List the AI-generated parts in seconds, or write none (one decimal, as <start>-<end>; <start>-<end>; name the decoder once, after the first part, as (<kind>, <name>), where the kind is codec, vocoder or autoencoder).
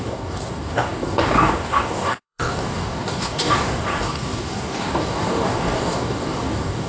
0.0-6.9 (codec, DAC)